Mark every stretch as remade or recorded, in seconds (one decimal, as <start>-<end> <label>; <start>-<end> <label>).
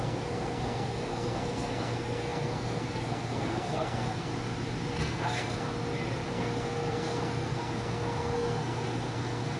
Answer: 0.0-4.3 remade; 4.3-4.9 recorded; 4.9-5.7 remade; 5.7-6.3 recorded; 6.3-9.6 remade